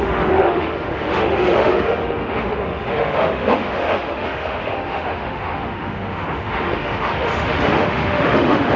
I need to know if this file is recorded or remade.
remade